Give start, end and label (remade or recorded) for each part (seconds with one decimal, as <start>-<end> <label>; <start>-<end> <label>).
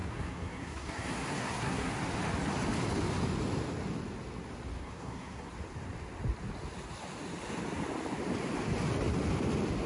0.0-1.9 remade; 1.9-4.8 recorded; 4.8-5.5 remade; 5.5-9.9 recorded